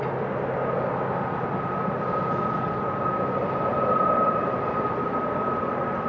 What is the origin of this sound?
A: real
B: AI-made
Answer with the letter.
A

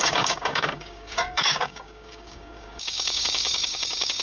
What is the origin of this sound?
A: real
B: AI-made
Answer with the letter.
B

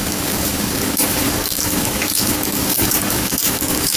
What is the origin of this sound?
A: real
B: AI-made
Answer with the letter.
B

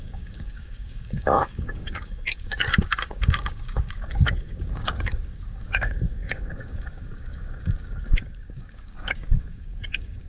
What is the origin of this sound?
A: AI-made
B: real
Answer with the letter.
A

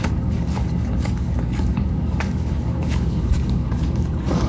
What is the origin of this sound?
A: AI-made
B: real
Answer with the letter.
A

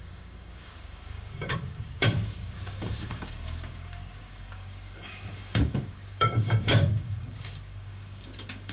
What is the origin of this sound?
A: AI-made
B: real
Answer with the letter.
A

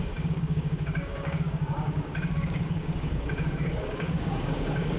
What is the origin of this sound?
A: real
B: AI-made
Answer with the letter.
B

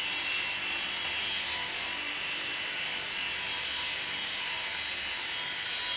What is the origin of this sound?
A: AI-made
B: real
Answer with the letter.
B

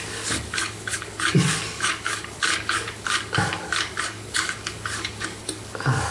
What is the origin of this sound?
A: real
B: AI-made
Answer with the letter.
B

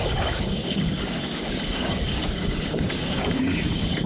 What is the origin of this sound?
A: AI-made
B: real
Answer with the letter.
A